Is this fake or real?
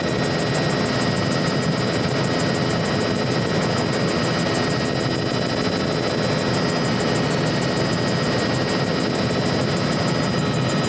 real